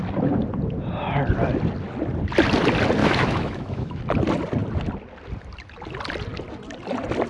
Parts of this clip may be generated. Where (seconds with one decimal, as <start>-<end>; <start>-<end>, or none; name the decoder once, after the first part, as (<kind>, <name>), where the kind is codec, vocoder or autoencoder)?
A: 3.0-4.0 (autoencoder, DAC-VAE)